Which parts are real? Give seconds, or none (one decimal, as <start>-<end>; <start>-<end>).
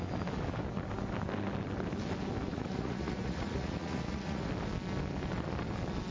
0.0-2.5; 4.5-6.1